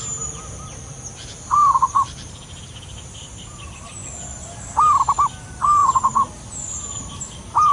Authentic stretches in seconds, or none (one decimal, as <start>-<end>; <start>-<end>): 0.0-7.7